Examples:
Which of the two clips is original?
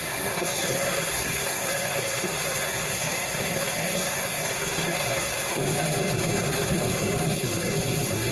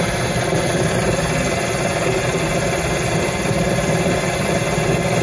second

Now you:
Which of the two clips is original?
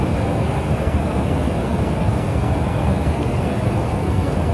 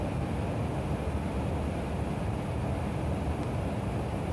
second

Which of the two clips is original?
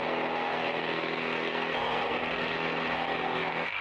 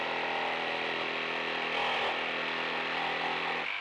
second